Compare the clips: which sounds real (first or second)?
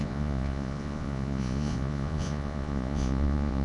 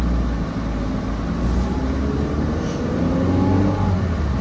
second